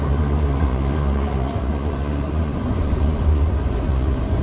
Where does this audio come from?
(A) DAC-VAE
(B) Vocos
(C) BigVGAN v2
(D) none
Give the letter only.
B